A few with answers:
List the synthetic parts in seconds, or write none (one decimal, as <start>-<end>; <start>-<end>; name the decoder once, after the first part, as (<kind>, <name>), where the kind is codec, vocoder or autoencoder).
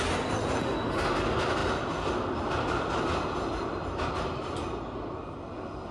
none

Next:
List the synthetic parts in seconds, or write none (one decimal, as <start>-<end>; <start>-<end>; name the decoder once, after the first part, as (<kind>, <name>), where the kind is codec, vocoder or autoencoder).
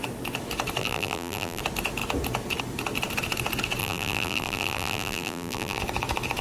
0.8-1.6 (vocoder, BigVGAN v2); 3.8-5.8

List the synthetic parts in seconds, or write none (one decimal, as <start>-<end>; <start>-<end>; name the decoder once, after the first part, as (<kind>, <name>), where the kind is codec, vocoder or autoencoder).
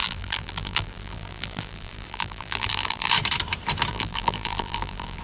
0.0-3.1 (vocoder, BigVGAN v2); 3.9-5.2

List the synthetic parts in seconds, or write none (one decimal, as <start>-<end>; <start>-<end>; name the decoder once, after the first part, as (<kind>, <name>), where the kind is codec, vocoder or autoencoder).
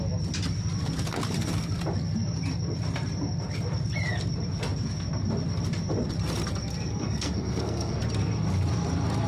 6.9-8.0 (codec, SNAC)